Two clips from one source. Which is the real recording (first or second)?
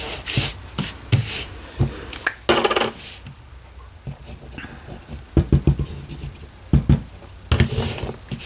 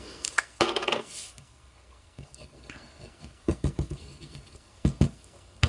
first